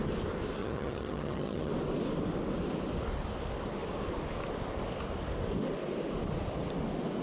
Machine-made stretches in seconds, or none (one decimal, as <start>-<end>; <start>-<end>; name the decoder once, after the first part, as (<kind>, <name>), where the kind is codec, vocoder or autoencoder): 0.6-1.7 (vocoder, HiFi-GAN)